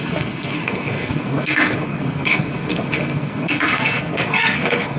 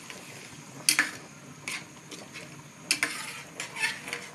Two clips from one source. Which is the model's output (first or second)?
first